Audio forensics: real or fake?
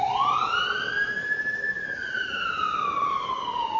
real